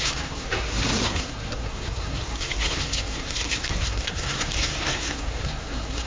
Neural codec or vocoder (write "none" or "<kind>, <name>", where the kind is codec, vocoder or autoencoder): codec, SNAC